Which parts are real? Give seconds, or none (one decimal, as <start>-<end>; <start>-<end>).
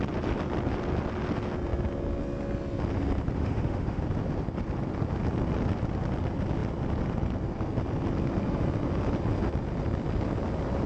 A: 0.0-3.4; 4.0-10.9